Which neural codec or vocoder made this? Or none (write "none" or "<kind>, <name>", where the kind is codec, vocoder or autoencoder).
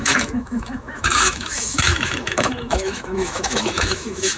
autoencoder, DAC-VAE